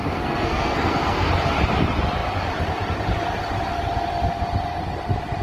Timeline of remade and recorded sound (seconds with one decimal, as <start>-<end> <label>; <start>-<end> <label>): 0.0-1.3 remade; 1.3-5.4 recorded